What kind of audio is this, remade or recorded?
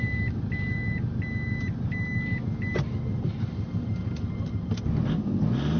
recorded